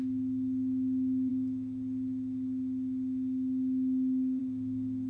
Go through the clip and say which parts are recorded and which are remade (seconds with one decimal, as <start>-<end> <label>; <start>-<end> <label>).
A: 0.0-5.1 recorded